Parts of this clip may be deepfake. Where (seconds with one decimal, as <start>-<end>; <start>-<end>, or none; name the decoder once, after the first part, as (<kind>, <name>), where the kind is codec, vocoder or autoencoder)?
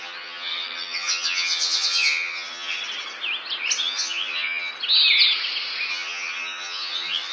0.0-2.8 (vocoder, HiFi-GAN); 3.8-4.7; 5.9-7.3